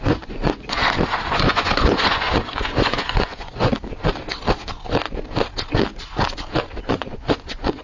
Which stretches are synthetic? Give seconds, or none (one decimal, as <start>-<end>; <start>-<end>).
0.0-0.8; 1.3-3.7; 6.8-7.8